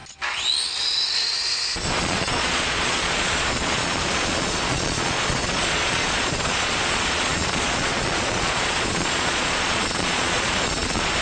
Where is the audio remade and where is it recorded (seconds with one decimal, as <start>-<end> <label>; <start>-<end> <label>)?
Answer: 0.0-2.0 recorded; 2.0-11.2 remade